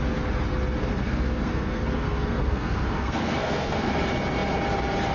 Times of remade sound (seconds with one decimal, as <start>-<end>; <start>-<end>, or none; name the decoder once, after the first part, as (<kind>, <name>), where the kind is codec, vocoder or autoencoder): 0.8-3.9 (codec, SNAC)